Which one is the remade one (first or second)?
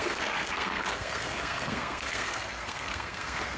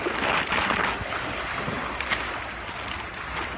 first